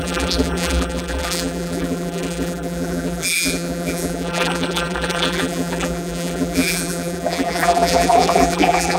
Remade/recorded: remade